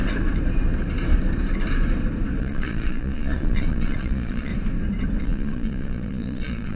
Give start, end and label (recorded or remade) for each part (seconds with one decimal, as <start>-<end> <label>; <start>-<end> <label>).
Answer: 0.0-2.4 recorded; 2.4-4.5 remade; 4.5-5.2 recorded; 5.2-6.8 remade